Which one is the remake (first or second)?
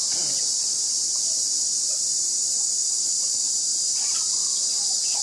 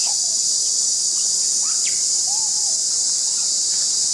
first